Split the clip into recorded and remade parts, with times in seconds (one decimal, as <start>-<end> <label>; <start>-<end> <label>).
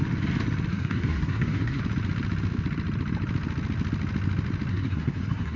0.0-0.7 recorded; 0.7-1.8 remade; 1.8-4.7 recorded; 4.7-5.6 remade